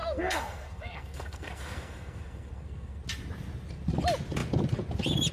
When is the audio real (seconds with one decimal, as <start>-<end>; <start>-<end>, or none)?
3.0-5.3